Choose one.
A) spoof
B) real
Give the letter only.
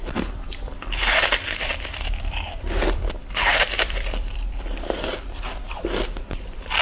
A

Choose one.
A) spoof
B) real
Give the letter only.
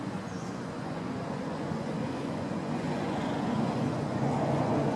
A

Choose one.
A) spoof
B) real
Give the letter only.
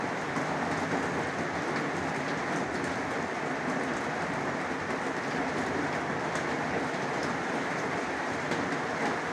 B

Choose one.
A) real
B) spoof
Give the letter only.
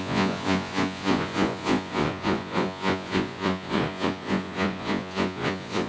B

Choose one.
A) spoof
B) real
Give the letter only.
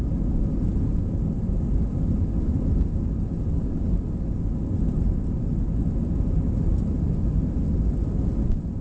B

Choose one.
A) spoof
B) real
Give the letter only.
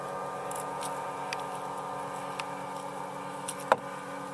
B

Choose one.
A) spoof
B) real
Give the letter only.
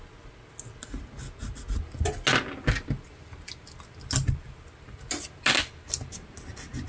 B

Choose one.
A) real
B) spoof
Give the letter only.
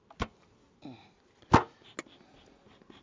A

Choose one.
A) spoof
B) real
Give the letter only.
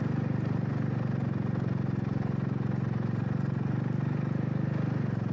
B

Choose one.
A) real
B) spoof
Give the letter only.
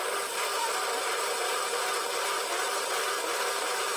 A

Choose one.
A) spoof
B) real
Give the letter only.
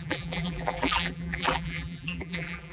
A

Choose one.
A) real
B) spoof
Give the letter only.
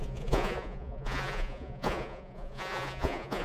B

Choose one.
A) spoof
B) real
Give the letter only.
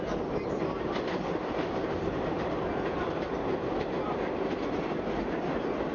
B